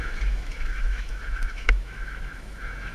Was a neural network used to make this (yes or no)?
yes